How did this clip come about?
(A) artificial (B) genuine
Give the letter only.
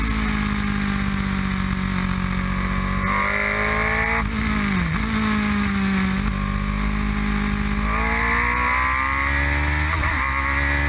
B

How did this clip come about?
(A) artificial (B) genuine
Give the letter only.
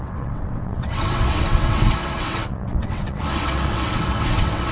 A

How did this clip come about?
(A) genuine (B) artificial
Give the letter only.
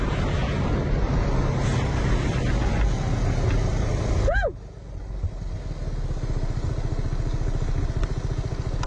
A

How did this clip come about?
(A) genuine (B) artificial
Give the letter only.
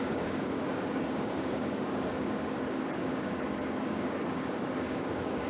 B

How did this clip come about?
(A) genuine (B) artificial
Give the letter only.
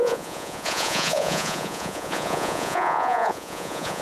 B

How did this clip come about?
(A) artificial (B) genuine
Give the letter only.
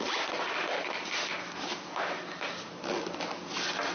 B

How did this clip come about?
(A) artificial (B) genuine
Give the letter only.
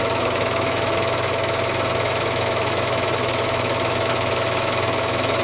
A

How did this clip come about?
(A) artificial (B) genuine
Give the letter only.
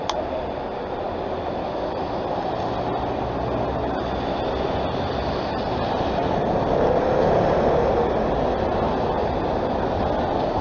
B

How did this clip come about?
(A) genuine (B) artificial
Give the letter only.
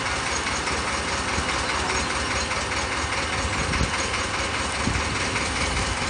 A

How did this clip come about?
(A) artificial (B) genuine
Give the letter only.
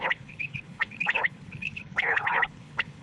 A